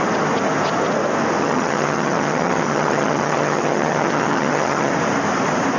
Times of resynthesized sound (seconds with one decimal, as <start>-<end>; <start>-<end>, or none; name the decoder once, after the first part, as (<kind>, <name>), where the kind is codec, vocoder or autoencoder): 1.4-4.9 (vocoder, HiFi-GAN)